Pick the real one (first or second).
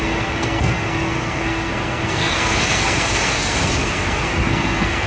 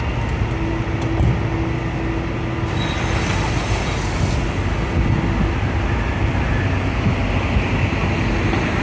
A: second